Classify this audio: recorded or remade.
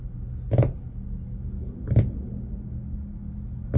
recorded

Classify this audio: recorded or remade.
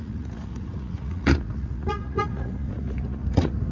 remade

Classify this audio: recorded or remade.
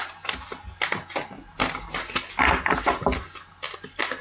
recorded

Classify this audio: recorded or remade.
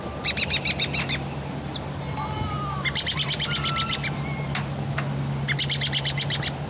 recorded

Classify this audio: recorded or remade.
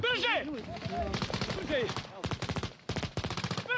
recorded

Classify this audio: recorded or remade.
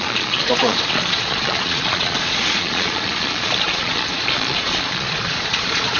remade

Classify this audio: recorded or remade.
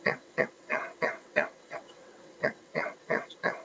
remade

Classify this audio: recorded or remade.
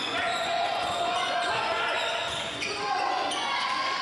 remade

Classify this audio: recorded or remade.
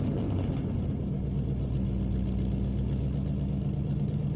recorded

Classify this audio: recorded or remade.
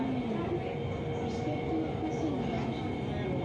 recorded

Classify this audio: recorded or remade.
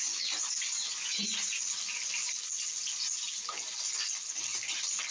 recorded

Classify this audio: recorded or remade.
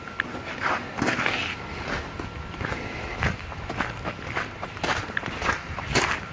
recorded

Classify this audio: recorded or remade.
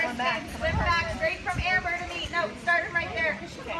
recorded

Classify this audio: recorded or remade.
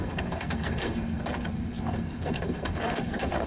remade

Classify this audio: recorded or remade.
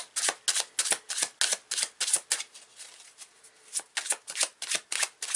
recorded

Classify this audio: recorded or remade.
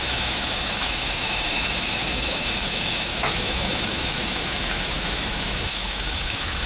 remade